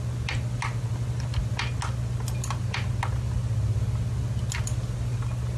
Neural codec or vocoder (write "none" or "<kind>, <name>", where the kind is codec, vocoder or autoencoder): none